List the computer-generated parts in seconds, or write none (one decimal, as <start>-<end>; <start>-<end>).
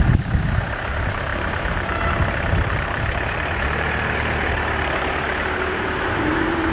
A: 0.0-6.7